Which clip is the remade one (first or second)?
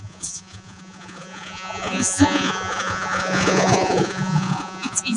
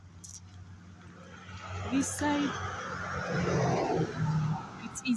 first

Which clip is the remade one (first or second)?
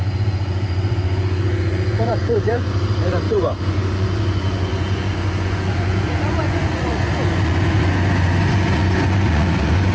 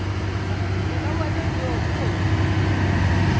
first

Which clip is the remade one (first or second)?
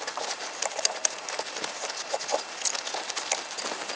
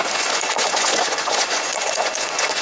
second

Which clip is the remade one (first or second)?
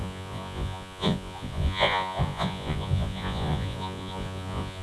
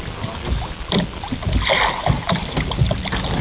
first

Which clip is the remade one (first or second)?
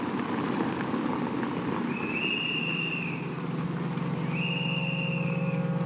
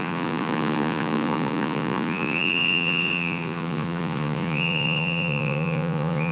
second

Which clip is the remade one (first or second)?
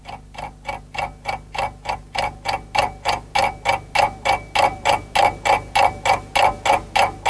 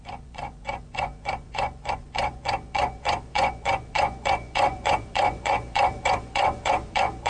second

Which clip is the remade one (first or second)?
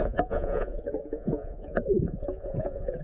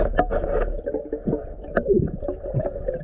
first